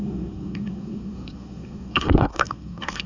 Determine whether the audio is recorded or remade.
remade